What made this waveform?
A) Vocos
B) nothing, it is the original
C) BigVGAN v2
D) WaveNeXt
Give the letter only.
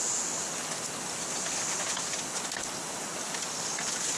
B